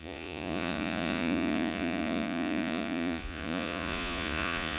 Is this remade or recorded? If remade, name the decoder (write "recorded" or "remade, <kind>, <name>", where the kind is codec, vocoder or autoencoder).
remade, vocoder, Vocos